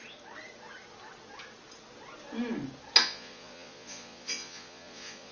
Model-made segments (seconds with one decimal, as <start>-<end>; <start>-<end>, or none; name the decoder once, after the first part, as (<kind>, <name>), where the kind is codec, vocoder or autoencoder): 3.0-5.3 (vocoder, Vocos)